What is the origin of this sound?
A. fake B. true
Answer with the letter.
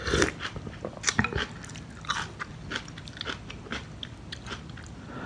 B